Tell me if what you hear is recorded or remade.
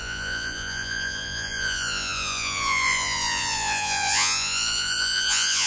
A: remade